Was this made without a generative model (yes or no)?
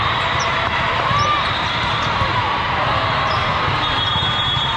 no